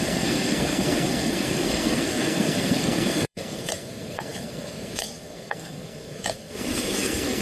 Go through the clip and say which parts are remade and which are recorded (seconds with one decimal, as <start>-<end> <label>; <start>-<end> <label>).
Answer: 0.0-7.4 remade